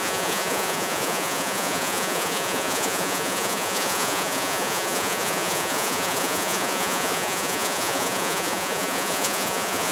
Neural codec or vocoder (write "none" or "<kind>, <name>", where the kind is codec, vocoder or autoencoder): vocoder, Vocos